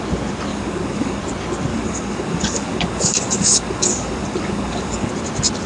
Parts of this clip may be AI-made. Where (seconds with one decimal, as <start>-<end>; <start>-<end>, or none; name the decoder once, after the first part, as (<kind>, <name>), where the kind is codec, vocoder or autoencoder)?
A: 0.5-1.2 (codec, DAC); 1.7-5.1